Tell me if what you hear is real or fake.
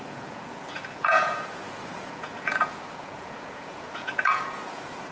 fake